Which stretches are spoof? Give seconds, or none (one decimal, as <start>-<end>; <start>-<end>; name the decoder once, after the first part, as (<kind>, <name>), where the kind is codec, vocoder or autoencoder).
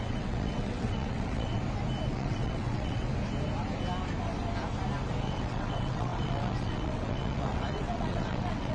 0.0-1.6 (vocoder, WaveNeXt); 2.1-3.1; 5.2-8.7